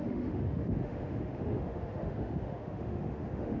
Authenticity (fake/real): fake